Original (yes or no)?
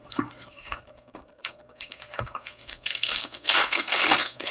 no